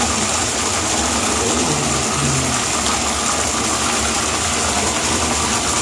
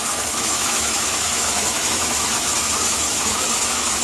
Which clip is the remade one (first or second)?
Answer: second